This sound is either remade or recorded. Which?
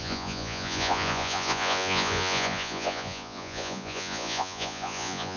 remade